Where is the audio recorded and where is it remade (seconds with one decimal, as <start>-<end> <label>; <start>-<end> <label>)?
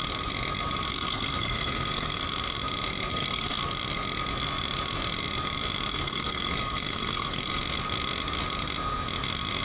0.0-0.9 recorded; 0.9-2.2 remade; 2.2-3.1 recorded; 3.1-3.6 remade; 3.6-5.9 recorded; 5.9-7.6 remade; 7.6-9.6 recorded